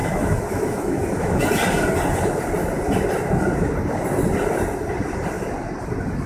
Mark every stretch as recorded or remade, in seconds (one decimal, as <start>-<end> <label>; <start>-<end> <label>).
0.0-1.4 remade; 1.4-6.3 recorded